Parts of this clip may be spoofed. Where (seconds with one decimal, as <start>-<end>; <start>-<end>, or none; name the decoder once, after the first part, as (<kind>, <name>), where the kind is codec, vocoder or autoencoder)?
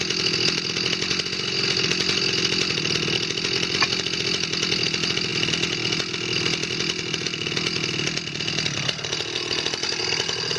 none